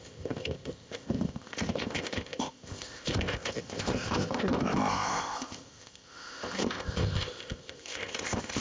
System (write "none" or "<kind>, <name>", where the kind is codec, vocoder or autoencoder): codec, ZipCodec